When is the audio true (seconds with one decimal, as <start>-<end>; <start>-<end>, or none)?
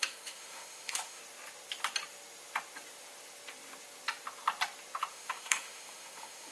1.2-5.1